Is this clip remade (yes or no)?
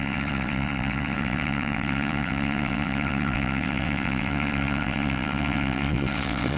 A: yes